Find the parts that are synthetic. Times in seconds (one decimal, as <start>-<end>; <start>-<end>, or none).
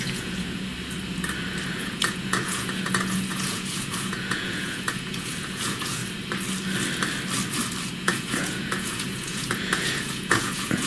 0.0-0.7; 1.7-6.0; 7.9-10.9